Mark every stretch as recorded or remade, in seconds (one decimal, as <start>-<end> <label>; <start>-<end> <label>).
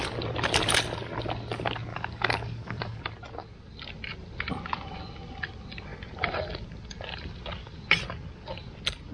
0.0-1.9 recorded; 1.9-3.0 remade; 3.0-9.1 recorded